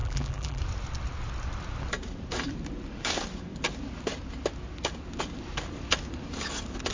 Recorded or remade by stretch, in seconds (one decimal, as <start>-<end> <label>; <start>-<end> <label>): 0.0-0.6 remade; 0.6-6.9 recorded